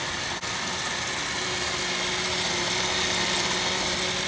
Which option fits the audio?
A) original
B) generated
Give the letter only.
A